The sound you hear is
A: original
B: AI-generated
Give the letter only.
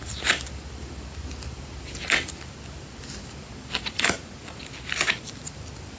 A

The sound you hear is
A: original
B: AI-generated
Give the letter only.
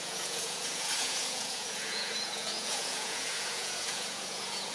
B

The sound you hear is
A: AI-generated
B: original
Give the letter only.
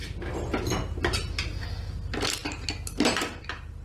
B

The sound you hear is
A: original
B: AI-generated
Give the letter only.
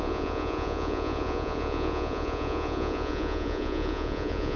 B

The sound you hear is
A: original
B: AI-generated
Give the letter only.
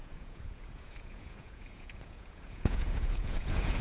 B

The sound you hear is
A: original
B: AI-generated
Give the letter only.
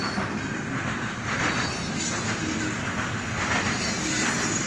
A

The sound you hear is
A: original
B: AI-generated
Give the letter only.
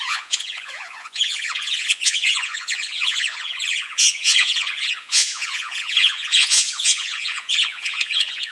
B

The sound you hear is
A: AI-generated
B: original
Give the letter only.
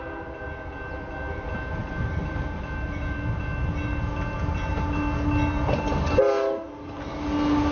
B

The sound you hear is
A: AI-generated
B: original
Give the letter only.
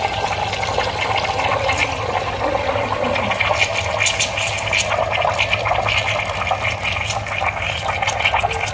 B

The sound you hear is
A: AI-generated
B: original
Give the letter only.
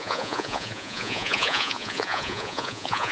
A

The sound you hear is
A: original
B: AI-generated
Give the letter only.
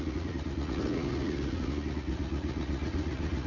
B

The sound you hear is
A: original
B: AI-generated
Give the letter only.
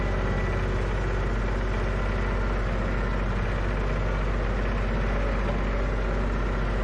A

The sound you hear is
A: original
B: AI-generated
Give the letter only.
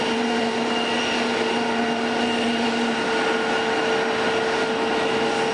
A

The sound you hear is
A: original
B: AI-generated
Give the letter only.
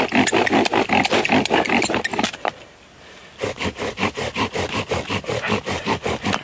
A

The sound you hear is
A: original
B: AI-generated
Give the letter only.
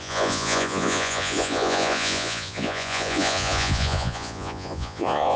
B